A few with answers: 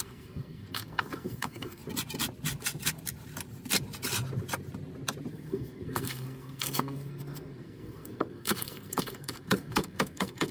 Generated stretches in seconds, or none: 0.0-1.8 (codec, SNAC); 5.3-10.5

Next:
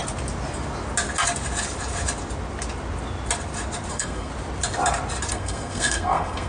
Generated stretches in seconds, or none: 3.9-4.3 (codec, SNAC); 5.3-6.5

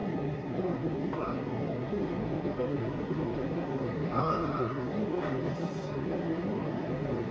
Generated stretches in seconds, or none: 0.0-7.3 (codec, SNAC)

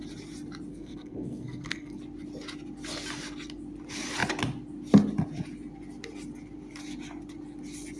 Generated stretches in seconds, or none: 0.7-2.0 (codec, SNAC)

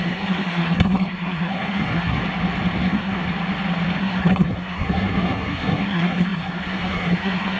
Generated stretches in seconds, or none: 0.0-2.2 (codec, SNAC); 2.8-3.2; 4.0-7.6

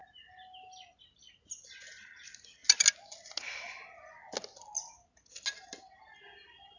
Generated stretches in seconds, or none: none

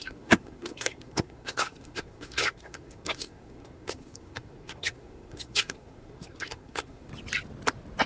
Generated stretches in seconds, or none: 0.0-7.1 (codec, SNAC)